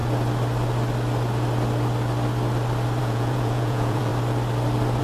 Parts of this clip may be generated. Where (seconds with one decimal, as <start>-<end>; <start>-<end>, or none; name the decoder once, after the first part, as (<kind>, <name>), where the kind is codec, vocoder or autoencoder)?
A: 3.0-4.1 (vocoder, Vocos)